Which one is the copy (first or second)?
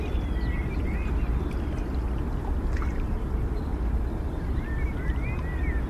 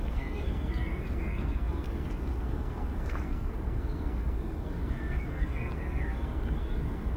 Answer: second